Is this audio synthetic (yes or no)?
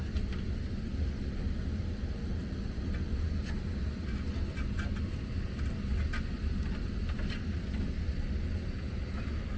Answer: no